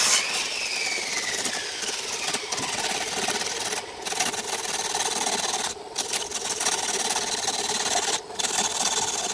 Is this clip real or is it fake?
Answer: real